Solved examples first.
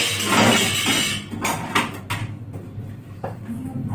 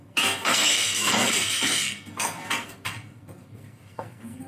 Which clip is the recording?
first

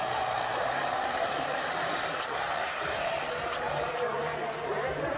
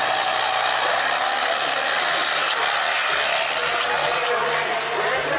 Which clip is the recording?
second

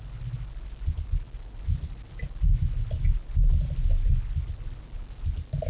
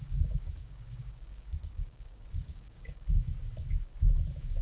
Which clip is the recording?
first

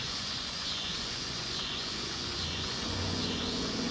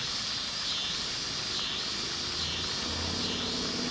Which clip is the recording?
second